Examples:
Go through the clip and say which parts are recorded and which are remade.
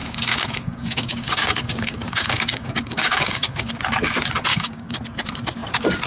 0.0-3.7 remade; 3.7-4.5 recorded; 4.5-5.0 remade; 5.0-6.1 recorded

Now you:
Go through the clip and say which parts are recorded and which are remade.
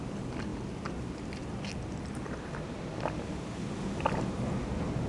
0.0-5.1 recorded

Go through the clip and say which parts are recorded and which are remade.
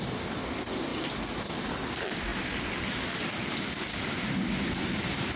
0.0-5.4 recorded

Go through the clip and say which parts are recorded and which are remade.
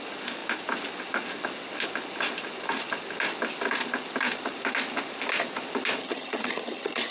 0.0-6.0 recorded; 6.0-7.1 remade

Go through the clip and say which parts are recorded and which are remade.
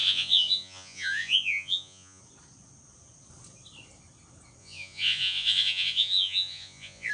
0.0-2.2 remade; 2.2-4.6 recorded; 4.6-7.1 remade